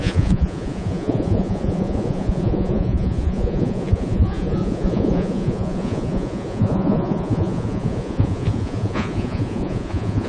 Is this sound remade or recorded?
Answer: remade